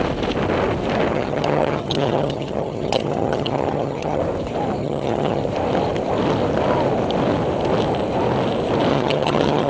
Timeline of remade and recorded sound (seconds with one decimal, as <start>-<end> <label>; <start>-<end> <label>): 0.0-1.1 recorded; 1.1-4.2 remade; 4.2-4.8 recorded; 4.8-5.4 remade; 5.4-8.9 recorded; 8.9-9.7 remade